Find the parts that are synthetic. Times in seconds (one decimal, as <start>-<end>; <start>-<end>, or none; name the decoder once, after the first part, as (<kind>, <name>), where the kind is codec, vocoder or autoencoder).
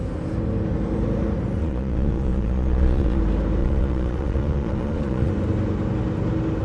1.6-3.2 (vocoder, Vocos); 3.6-5.3